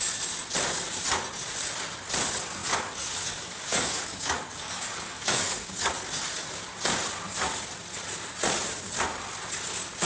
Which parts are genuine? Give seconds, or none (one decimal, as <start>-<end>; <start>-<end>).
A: 0.0-2.6; 5.9-10.1